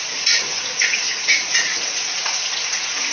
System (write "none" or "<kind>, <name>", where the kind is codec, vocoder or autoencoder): vocoder, Vocos